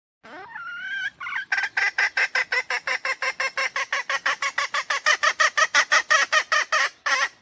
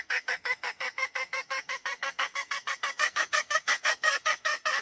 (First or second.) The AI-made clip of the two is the second